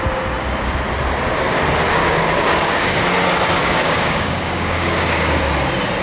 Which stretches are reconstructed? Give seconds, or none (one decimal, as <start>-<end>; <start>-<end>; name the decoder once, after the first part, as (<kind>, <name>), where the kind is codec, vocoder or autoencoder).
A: 2.0-3.0 (codec, DAC); 3.6-5.4